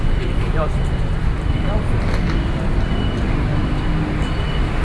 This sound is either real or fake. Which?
real